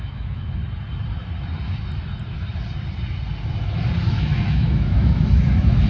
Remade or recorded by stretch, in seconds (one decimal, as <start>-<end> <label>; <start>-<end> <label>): 0.0-0.6 remade; 0.6-4.1 recorded; 4.1-5.9 remade